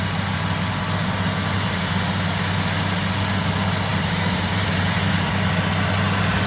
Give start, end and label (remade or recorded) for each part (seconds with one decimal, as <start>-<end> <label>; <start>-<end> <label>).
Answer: 0.0-1.0 recorded; 1.0-2.0 remade; 2.0-3.9 recorded; 3.9-5.3 remade; 5.3-6.5 recorded